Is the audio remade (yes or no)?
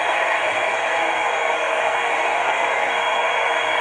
yes